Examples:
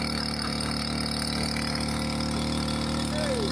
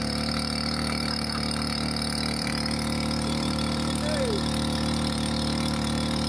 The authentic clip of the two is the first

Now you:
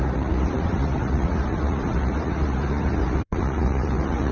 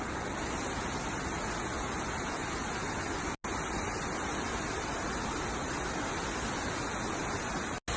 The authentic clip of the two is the second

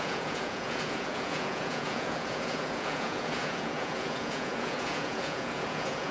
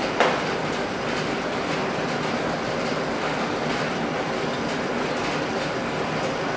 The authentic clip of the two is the second